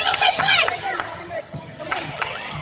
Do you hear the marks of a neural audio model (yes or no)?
yes